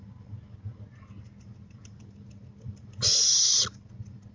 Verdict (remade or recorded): recorded